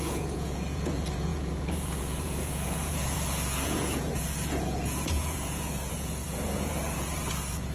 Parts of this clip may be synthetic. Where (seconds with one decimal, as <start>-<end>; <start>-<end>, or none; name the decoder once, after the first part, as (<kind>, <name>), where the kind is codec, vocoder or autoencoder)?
0.0-7.7 (vocoder, Vocos)